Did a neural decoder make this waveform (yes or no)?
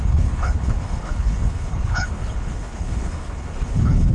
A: yes